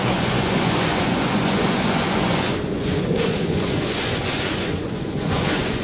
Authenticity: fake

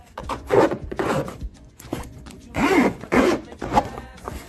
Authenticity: fake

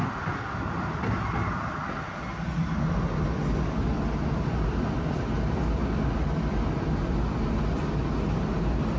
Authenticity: real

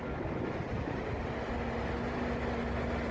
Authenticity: real